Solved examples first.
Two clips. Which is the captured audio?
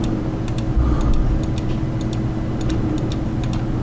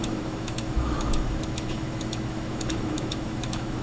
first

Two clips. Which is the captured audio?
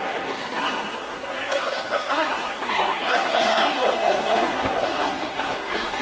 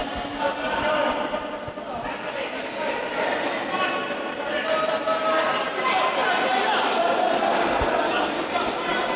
second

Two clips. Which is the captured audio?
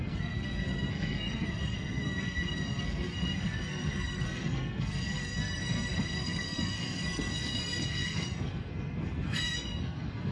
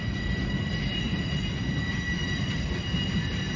second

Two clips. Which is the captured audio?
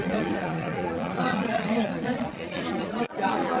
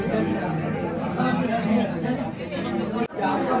second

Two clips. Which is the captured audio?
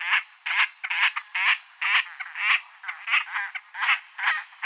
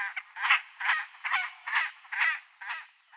first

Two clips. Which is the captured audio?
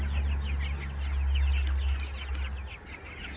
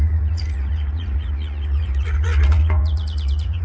first